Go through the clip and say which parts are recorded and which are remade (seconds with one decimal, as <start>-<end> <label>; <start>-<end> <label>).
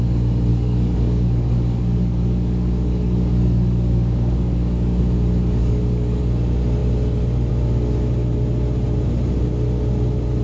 0.0-0.5 recorded; 0.5-5.0 remade; 5.0-5.6 recorded; 5.6-6.2 remade; 6.2-10.4 recorded